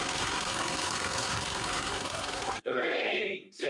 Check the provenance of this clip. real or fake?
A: fake